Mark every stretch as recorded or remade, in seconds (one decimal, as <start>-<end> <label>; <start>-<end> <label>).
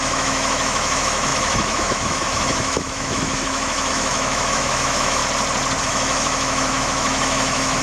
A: 0.0-5.2 remade; 5.2-5.8 recorded; 5.8-7.8 remade